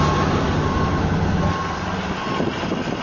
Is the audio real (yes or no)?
yes